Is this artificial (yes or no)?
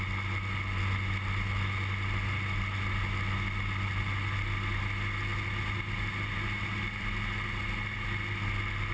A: no